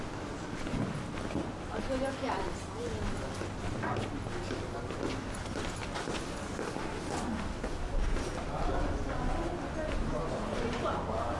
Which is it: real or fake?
real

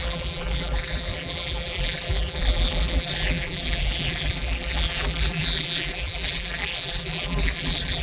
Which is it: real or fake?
fake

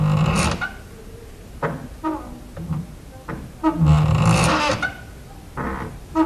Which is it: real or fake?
real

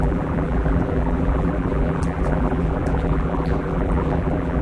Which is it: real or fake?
fake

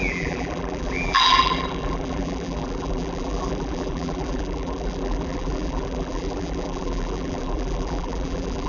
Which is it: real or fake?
fake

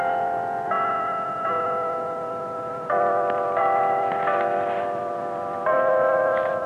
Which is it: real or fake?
real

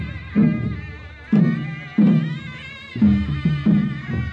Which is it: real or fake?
real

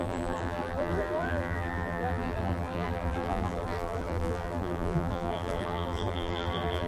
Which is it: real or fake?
fake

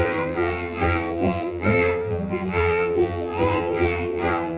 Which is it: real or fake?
fake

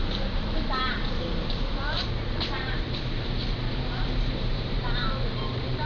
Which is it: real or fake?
fake